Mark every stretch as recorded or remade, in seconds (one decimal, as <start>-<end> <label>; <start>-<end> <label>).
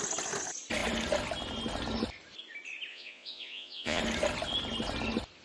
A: 0.0-2.9 recorded; 2.9-4.0 remade; 4.0-5.4 recorded